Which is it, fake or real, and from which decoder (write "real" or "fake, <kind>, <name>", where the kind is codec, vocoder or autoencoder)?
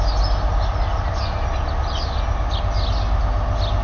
real